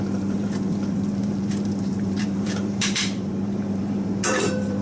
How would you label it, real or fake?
fake